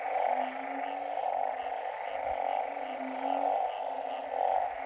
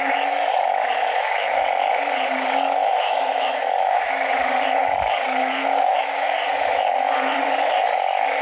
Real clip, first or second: first